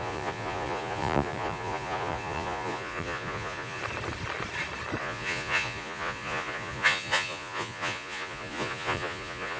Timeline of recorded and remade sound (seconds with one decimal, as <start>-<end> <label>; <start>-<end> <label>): 0.0-3.8 remade; 3.8-5.0 recorded; 5.0-9.6 remade